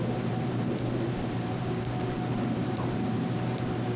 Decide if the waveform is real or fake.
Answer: fake